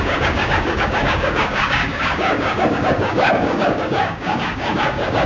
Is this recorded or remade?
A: remade